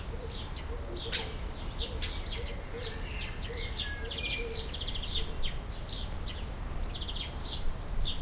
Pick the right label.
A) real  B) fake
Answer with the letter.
A